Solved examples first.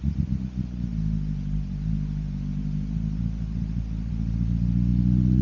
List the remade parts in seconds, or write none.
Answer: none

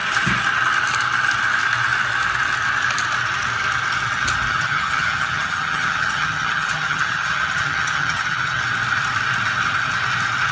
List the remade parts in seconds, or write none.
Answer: 4.5-8.6 (vocoder, HiFi-GAN)

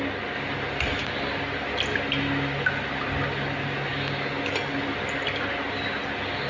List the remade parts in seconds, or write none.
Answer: none

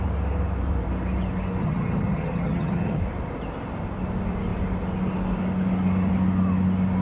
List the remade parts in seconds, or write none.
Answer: 1.6-3.0 (vocoder, HiFi-GAN)